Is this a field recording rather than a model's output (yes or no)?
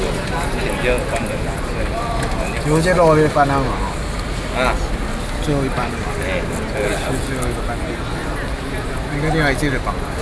yes